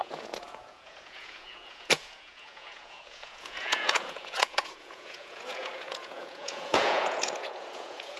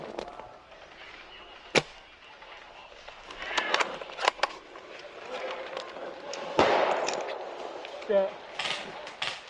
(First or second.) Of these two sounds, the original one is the second